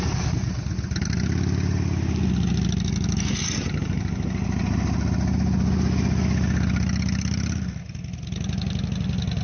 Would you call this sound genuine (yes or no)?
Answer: yes